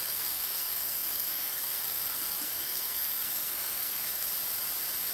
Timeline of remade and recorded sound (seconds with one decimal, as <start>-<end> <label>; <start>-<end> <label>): 0.0-4.3 remade; 4.3-5.1 recorded